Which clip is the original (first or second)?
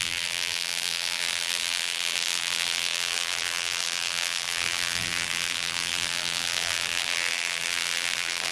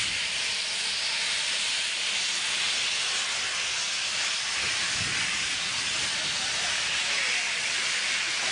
second